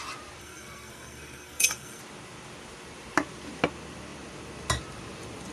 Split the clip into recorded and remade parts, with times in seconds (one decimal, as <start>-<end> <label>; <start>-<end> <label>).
0.0-0.4 recorded; 0.4-2.0 remade; 2.0-5.5 recorded